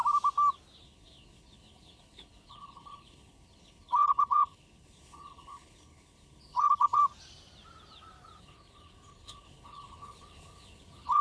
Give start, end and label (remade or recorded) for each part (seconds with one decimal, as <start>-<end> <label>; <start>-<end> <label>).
0.0-0.8 recorded; 0.8-7.0 remade; 7.0-8.4 recorded; 8.4-11.2 remade